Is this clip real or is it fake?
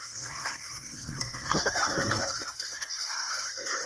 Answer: fake